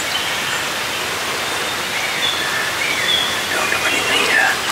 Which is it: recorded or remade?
recorded